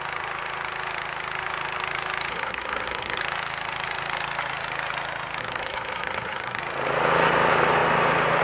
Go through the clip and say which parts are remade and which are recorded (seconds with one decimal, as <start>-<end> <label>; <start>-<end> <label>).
0.0-2.3 recorded; 2.3-3.2 remade; 3.2-5.4 recorded; 5.4-6.6 remade; 6.6-8.4 recorded